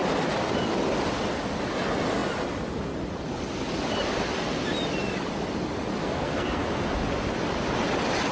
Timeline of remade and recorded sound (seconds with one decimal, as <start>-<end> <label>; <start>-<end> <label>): 0.0-6.0 recorded; 6.0-6.6 remade; 6.6-8.3 recorded